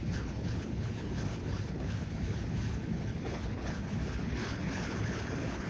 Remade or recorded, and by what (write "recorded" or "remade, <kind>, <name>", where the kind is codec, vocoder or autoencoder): remade, codec, HILCodec